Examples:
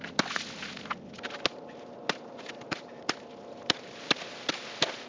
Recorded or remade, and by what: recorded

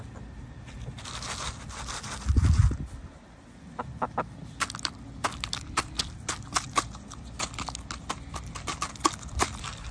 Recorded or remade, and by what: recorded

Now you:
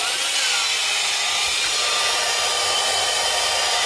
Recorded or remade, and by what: recorded